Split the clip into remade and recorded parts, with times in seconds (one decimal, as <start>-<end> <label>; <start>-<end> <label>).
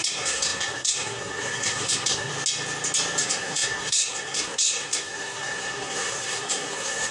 0.0-2.3 remade; 2.3-3.2 recorded; 3.2-7.1 remade